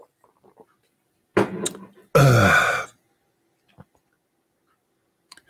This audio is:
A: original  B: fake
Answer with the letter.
A